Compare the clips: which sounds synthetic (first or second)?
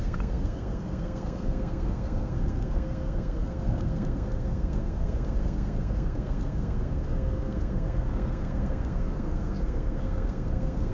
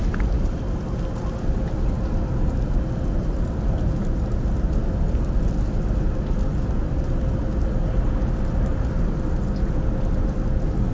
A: first